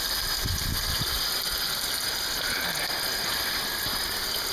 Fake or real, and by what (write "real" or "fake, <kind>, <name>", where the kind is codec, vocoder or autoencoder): real